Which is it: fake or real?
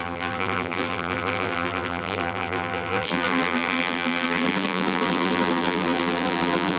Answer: fake